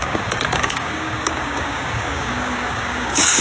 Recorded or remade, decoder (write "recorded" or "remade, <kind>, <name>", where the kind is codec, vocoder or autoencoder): remade, codec, DAC